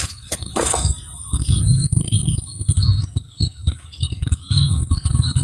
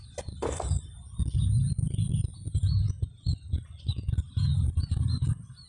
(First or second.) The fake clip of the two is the first